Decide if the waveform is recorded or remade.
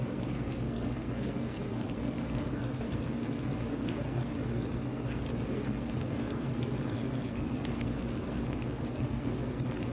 remade